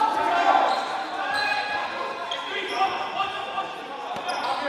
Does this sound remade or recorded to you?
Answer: recorded